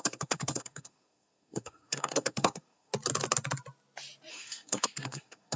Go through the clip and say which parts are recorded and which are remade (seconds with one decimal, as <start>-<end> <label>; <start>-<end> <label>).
0.0-2.9 remade; 2.9-4.3 recorded; 4.3-5.6 remade

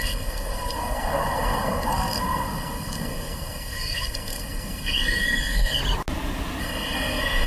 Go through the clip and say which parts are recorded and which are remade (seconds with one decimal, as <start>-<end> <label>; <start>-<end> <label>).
0.0-5.8 remade; 5.8-6.6 recorded; 6.6-7.5 remade

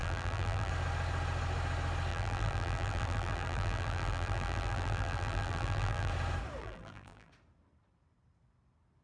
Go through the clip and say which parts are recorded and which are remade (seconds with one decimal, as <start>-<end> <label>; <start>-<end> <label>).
0.0-0.7 remade; 0.7-2.1 recorded; 2.1-6.1 remade; 6.1-6.6 recorded; 6.6-7.3 remade; 7.3-9.0 recorded

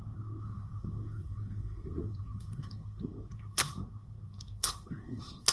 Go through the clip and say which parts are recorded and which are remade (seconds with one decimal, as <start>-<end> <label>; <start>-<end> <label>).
0.0-5.5 remade

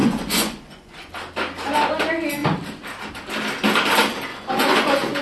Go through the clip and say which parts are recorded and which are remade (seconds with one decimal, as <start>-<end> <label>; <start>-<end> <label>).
0.0-1.1 remade; 1.1-4.3 recorded; 4.3-5.2 remade

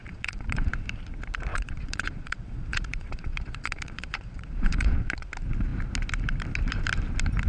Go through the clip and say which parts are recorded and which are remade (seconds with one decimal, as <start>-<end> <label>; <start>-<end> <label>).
0.0-0.7 remade; 0.7-1.5 recorded; 1.5-5.3 remade; 5.3-7.5 recorded

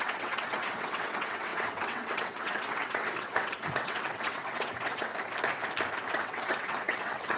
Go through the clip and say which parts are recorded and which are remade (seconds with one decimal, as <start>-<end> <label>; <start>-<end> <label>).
0.0-5.1 remade; 5.1-6.1 recorded; 6.1-7.4 remade

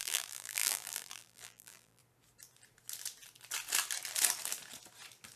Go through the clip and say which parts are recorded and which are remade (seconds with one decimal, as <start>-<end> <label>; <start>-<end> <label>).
0.0-2.0 remade; 2.0-5.4 recorded